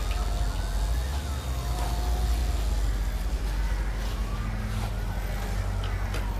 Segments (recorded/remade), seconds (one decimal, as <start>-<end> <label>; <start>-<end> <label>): 0.0-6.4 recorded